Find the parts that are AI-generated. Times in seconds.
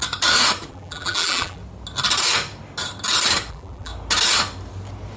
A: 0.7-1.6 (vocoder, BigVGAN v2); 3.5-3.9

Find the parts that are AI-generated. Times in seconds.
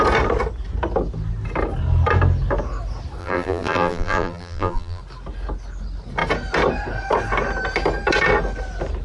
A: 3.2-5.0 (vocoder, BigVGAN v2)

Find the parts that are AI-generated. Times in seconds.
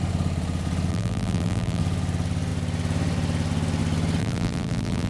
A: 0.9-1.8 (vocoder, BigVGAN v2); 4.2-5.1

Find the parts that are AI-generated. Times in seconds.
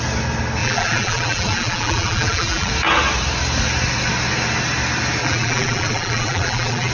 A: 0.6-2.7 (vocoder, BigVGAN v2); 5.2-6.9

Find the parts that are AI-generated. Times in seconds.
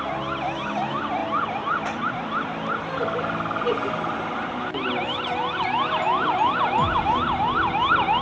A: 1.2-2.1 (vocoder, BigVGAN v2)